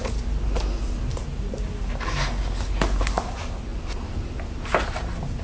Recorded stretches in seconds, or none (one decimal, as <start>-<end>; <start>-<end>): 3.0-3.7